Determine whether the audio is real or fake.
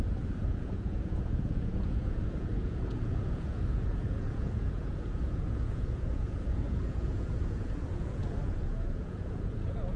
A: fake